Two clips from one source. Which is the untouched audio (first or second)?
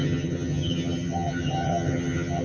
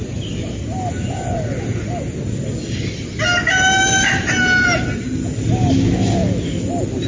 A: second